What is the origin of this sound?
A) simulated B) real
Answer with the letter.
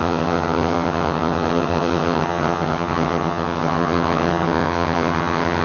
A